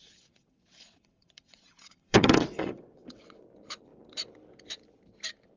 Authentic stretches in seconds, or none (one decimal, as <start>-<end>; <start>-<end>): 3.4-5.6